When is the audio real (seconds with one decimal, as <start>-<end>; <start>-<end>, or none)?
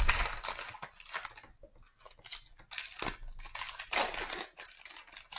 0.0-5.4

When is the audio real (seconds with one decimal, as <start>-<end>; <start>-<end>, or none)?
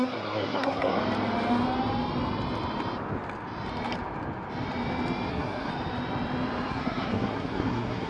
1.0-5.3; 5.7-6.7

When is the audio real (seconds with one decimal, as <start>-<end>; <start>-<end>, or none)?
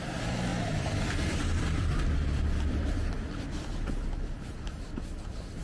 0.0-0.5; 3.9-5.6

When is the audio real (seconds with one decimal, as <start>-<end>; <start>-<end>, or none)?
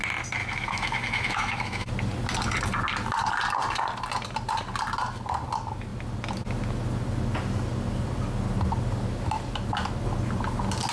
0.0-0.4; 1.9-10.9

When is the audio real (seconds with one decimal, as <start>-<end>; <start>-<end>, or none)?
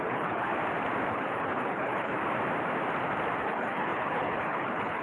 0.5-1.1; 2.2-3.4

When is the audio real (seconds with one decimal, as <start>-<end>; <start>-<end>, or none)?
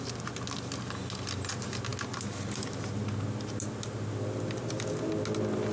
0.0-5.7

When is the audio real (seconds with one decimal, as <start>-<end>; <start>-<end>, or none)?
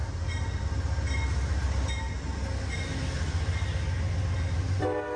0.0-5.2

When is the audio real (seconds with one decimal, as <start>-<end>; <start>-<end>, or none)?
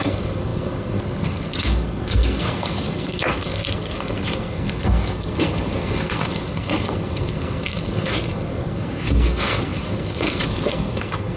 none